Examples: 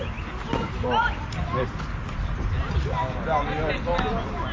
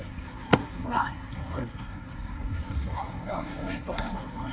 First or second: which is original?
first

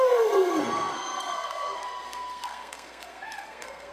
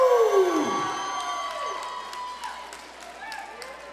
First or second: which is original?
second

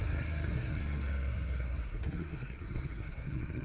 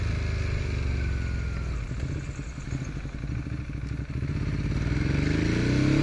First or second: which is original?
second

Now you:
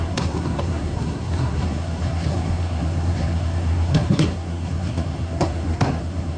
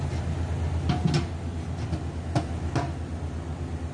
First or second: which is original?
second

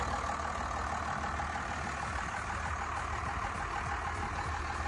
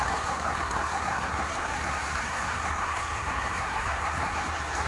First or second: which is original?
first